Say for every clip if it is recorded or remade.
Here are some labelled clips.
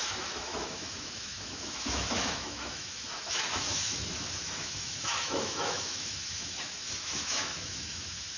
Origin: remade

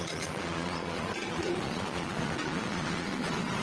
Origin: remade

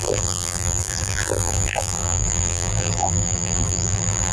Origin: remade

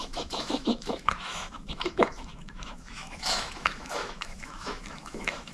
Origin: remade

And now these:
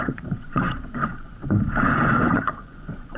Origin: remade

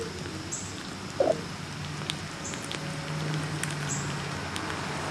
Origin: recorded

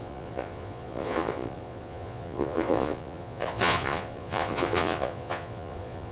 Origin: remade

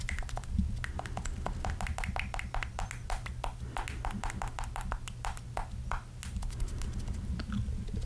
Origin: recorded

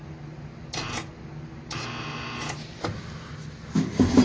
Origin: recorded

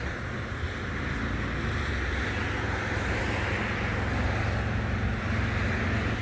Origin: recorded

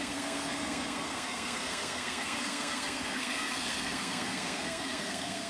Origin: remade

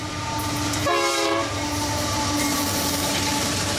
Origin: remade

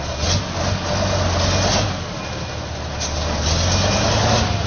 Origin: recorded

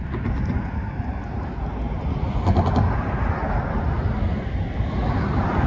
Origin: recorded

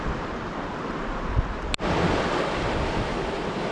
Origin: recorded